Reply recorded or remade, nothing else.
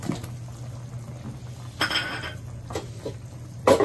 recorded